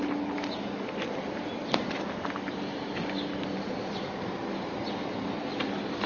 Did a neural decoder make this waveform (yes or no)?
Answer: no